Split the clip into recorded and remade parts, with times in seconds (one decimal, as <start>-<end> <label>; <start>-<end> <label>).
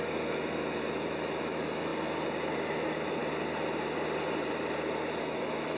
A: 0.0-1.9 remade; 1.9-2.7 recorded; 2.7-3.2 remade; 3.2-5.2 recorded; 5.2-5.8 remade